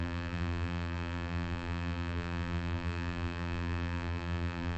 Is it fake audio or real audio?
fake